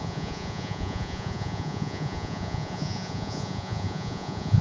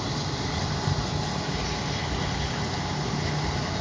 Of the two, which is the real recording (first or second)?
second